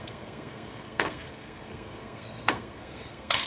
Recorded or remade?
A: remade